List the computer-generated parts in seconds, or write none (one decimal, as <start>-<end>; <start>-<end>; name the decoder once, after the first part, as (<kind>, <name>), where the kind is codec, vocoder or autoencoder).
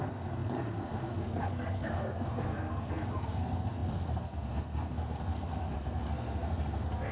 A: 0.0-7.1 (codec, SNAC)